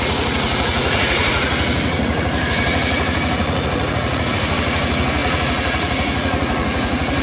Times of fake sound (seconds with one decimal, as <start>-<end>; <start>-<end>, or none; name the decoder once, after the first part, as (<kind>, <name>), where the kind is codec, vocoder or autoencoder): 0.0-7.2 (vocoder, Vocos)